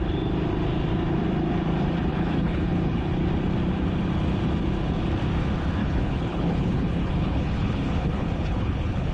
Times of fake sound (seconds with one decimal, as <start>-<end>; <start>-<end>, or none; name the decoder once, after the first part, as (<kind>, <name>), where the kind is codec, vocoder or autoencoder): 2.1-3.1 (codec, HILCodec); 5.8-9.1

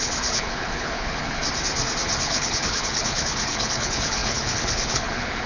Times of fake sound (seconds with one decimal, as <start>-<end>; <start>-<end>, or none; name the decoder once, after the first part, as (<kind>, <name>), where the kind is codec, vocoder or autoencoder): 0.0-1.4 (codec, HILCodec); 2.2-5.5